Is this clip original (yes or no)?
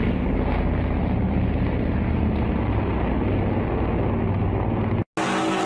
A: yes